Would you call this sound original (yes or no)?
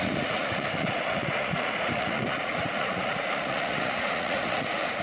no